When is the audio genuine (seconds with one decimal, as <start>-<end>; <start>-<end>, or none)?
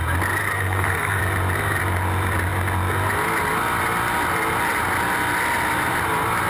0.0-0.4; 1.2-6.5